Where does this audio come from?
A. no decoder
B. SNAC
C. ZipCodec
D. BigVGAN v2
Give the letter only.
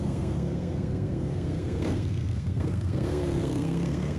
B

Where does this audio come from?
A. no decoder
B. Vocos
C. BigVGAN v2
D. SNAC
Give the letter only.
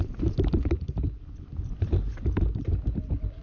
A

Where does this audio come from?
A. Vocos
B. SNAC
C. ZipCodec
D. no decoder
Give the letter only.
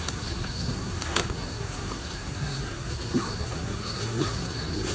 B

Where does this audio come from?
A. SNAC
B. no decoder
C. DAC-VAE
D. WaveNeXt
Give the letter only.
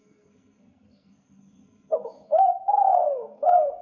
A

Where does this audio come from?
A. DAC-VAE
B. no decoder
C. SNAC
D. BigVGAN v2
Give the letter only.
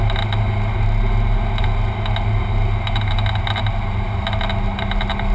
B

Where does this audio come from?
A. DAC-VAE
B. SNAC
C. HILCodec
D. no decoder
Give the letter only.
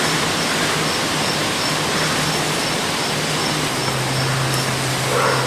D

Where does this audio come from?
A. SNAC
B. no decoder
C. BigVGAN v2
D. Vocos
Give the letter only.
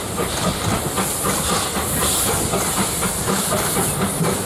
B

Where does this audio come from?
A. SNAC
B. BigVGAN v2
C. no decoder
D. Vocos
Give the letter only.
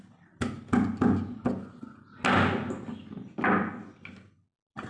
C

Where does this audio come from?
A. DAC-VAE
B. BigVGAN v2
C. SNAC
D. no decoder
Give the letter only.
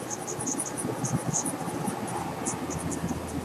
D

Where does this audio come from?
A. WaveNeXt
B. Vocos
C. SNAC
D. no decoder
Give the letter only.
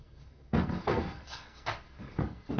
C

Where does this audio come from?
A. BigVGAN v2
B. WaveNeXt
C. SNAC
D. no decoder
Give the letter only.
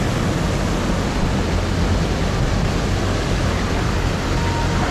D